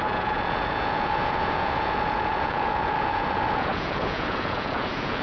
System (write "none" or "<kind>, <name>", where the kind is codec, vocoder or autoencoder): vocoder, Vocos